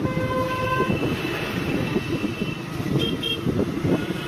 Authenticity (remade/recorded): recorded